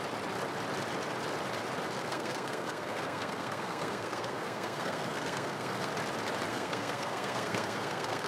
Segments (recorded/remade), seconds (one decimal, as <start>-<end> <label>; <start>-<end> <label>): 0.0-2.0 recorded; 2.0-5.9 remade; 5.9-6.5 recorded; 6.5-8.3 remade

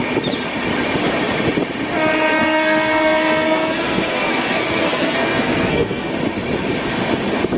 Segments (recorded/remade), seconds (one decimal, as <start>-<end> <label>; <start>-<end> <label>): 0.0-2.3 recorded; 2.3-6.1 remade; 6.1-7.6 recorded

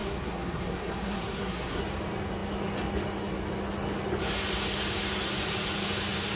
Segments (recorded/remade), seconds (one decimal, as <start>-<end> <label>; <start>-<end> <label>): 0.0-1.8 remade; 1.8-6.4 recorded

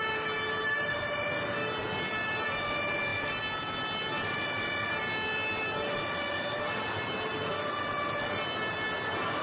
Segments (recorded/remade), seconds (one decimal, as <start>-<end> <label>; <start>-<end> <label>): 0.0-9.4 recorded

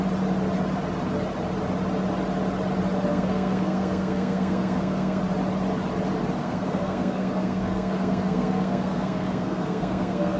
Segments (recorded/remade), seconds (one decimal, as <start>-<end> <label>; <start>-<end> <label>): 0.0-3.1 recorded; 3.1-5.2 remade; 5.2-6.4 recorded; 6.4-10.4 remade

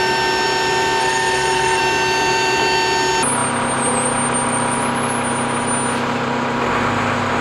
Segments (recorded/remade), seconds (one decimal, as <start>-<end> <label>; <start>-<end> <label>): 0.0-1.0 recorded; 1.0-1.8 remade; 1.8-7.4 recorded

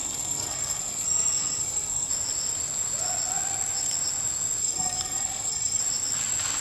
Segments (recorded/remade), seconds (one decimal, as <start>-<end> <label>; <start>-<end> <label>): 0.0-2.1 remade; 2.1-4.6 recorded; 4.6-5.8 remade; 5.8-6.6 recorded

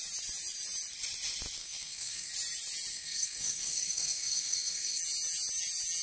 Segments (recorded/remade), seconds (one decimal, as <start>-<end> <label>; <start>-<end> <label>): 0.0-1.6 recorded; 1.6-2.3 remade; 2.3-2.9 recorded; 2.9-5.0 remade; 5.0-6.0 recorded